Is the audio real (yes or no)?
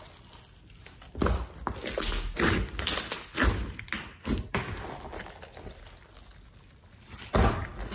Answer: yes